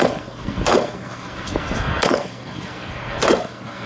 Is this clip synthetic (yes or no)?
yes